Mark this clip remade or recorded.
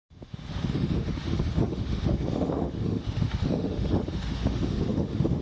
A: remade